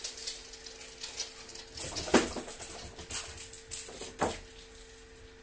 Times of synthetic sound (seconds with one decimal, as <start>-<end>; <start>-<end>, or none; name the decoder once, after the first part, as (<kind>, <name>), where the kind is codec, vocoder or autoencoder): none